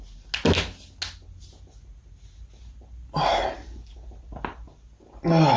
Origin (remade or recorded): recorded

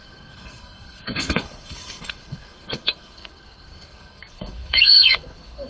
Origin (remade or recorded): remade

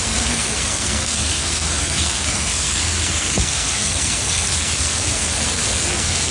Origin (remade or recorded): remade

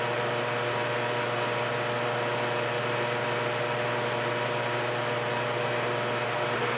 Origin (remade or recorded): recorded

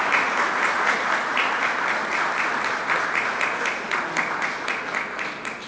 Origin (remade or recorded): recorded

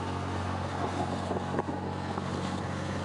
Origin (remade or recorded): remade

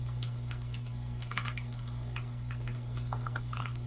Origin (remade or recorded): remade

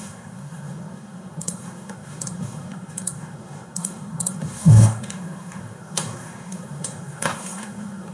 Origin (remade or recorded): remade